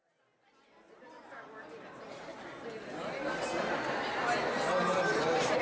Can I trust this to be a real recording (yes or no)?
yes